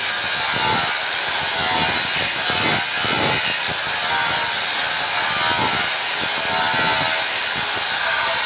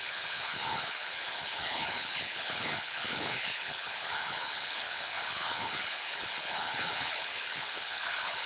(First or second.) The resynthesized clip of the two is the second